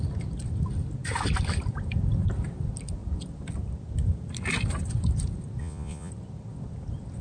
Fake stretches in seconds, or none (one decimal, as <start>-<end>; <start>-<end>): 5.6-6.1